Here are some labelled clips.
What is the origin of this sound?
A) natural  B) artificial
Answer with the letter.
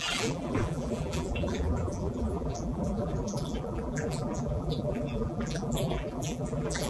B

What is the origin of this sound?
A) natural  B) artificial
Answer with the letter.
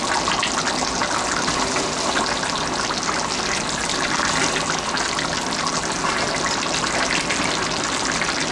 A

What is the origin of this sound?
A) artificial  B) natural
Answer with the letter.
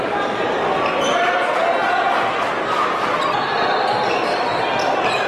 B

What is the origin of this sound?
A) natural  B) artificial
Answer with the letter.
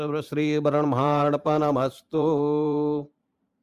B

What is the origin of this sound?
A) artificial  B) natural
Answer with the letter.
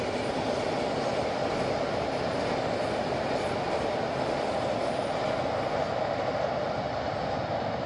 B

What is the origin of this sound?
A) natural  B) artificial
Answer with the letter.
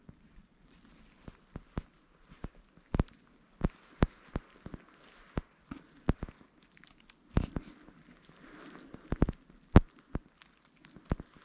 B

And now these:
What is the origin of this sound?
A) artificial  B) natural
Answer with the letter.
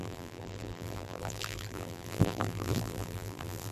A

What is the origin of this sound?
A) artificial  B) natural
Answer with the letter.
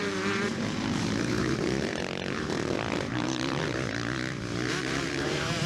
A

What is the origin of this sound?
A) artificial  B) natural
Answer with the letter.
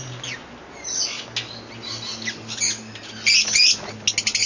B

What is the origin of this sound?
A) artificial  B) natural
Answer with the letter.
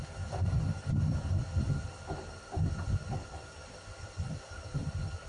A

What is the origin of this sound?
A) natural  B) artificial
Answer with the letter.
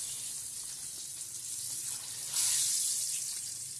A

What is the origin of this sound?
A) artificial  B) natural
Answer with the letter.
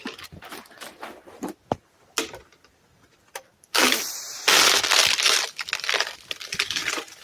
B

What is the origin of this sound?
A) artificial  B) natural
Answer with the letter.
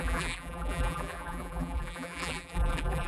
A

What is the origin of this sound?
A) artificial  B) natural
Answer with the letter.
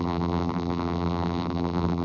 A